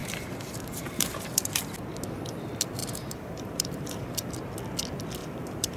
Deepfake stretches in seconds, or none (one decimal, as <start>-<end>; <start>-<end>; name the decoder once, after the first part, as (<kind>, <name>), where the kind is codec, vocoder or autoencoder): 0.0-1.6 (vocoder, BigVGAN v2); 2.8-4.3; 5.2-5.8